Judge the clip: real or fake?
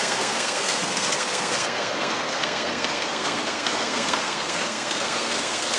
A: fake